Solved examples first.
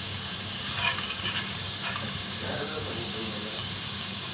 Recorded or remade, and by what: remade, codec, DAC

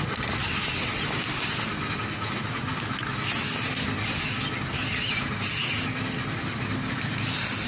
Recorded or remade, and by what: recorded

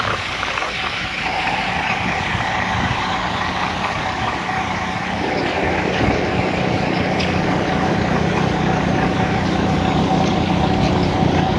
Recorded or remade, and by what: remade, codec, DAC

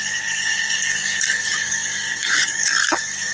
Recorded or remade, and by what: remade, codec, DAC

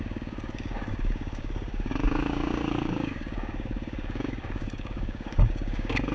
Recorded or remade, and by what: remade, codec, DAC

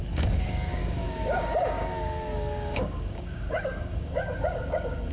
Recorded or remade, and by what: remade, codec, DAC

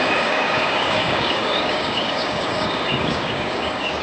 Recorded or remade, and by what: remade, codec, DAC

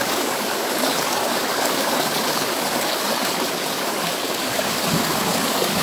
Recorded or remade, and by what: remade, codec, DAC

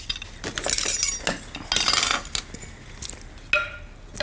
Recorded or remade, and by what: recorded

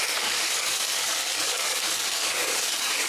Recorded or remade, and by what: remade, codec, DAC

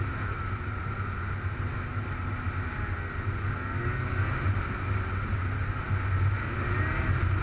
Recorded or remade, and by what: recorded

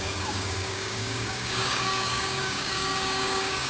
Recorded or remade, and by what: remade, codec, DAC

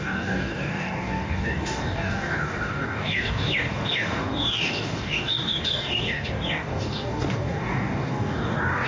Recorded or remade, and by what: remade, codec, DAC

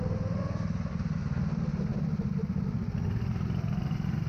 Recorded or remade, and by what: recorded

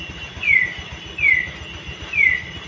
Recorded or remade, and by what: recorded